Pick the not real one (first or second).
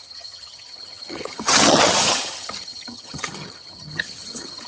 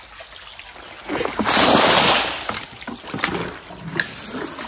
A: first